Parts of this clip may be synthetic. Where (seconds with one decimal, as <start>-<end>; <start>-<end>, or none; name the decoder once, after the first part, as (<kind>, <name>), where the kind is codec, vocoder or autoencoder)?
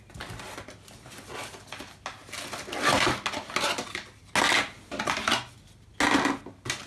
none